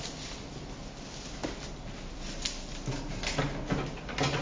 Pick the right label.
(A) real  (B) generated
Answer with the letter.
A